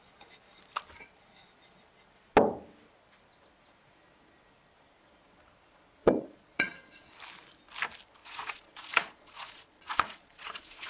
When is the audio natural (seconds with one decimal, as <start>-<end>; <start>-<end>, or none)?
0.0-6.0; 7.1-8.2